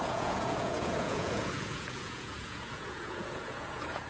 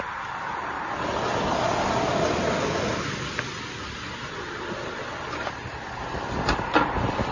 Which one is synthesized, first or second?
first